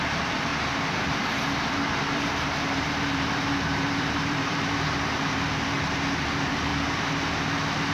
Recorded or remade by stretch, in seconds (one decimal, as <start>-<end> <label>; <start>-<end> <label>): 0.0-6.7 remade; 6.7-7.9 recorded

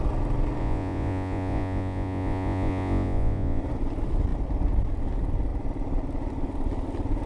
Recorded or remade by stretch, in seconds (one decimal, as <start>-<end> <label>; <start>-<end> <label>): 0.0-0.6 recorded; 0.6-3.6 remade; 3.6-7.3 recorded